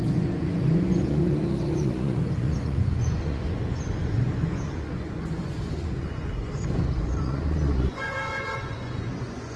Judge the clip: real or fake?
fake